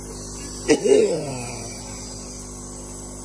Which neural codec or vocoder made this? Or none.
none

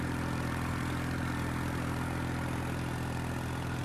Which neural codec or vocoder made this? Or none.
none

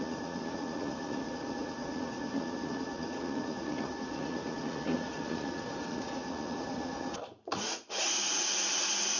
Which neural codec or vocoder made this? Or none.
vocoder, Vocos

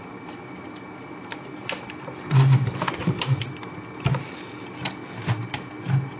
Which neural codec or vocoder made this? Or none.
none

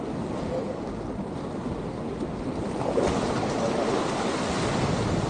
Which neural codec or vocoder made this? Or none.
none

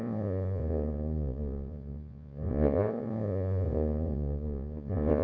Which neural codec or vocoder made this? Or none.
vocoder, Vocos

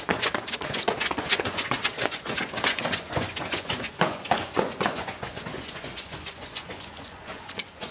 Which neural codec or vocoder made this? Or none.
vocoder, Vocos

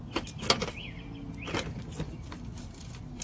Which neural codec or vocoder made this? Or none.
none